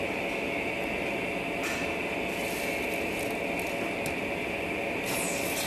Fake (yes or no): no